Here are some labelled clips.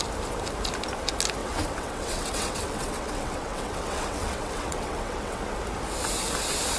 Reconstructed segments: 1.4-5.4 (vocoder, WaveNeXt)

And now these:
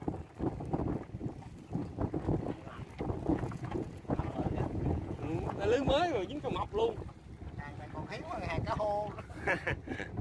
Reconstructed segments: 3.3-5.9 (vocoder, Vocos)